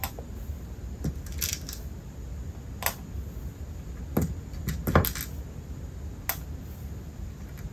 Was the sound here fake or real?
real